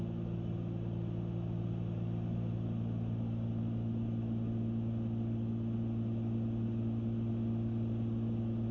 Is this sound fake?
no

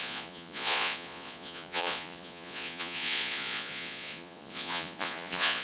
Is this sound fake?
yes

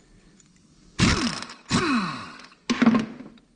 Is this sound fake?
no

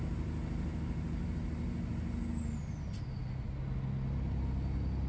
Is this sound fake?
no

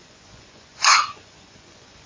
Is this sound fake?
yes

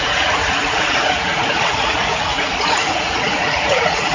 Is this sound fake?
yes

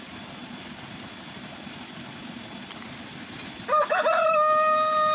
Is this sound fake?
no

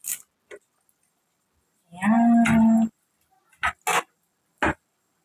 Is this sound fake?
no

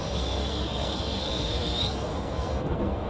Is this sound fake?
yes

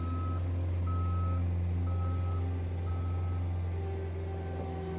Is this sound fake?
no